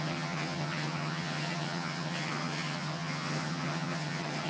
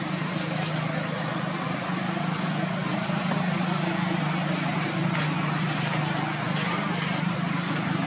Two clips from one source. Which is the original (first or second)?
second